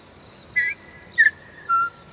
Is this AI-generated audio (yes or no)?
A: no